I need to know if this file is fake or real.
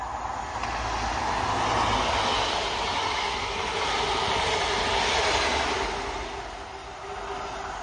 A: real